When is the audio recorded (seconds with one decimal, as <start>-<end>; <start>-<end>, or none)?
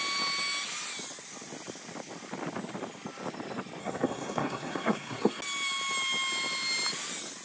0.0-3.8; 5.4-7.4